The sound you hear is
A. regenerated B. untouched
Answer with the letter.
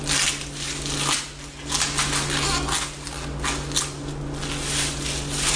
B